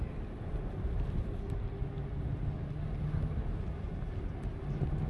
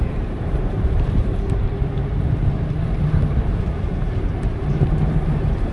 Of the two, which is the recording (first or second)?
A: first